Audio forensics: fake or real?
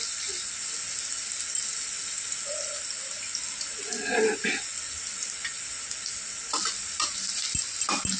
real